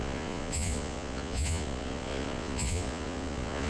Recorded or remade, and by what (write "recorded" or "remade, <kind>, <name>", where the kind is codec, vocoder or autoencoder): remade, vocoder, Vocos